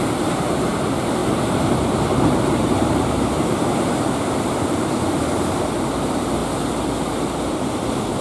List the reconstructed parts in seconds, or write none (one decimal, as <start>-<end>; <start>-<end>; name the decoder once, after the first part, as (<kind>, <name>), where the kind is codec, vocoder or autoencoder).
0.0-6.4 (vocoder, BigVGAN v2)